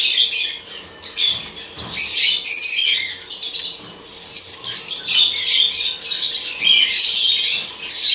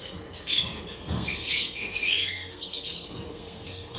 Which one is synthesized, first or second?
second